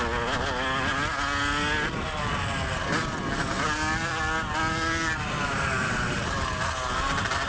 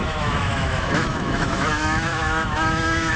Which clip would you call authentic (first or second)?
first